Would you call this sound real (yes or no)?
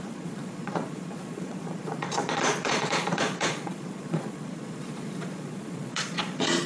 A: no